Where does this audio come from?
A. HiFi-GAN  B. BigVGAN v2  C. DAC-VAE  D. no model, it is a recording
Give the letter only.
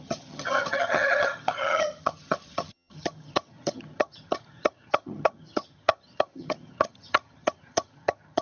A